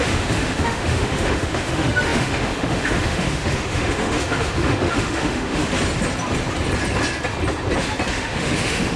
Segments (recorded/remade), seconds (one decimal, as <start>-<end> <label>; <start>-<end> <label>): 0.0-5.7 remade; 5.7-8.1 recorded; 8.1-9.0 remade